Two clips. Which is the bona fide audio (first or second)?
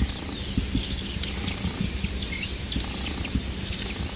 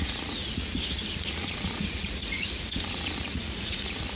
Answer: first